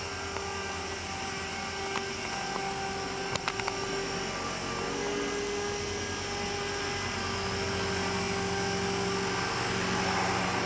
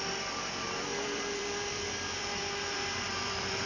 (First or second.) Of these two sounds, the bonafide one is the first